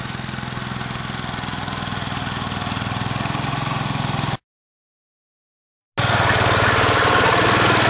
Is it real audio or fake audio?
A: real